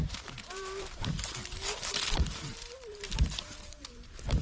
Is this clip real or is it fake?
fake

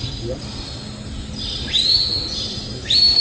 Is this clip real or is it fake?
real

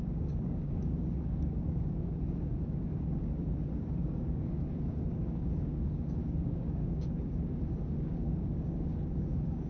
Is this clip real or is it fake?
fake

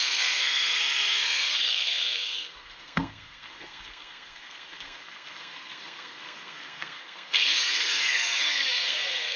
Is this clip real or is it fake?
fake